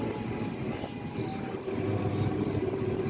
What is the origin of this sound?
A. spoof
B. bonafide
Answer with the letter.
B